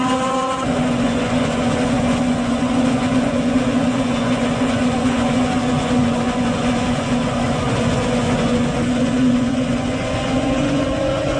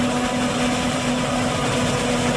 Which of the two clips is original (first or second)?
second